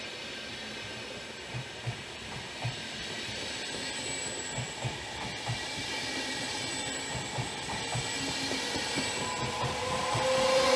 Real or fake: real